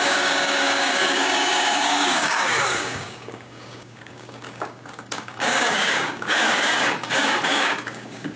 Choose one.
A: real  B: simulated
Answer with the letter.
B